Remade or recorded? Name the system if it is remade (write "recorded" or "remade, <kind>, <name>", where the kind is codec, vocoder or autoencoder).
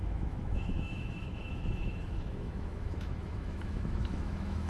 remade, autoencoder, DAC-VAE